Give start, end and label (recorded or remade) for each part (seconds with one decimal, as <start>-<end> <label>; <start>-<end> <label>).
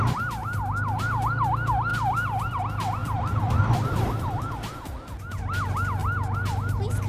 0.0-1.9 recorded; 1.9-2.6 remade; 2.6-3.0 recorded; 3.0-4.5 remade; 4.5-7.1 recorded